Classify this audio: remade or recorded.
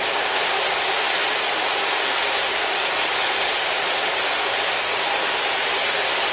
recorded